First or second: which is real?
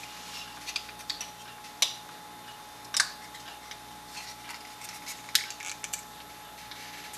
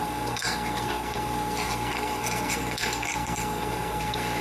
first